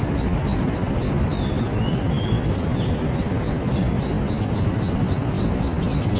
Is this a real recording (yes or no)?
yes